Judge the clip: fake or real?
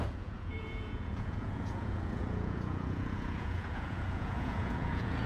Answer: fake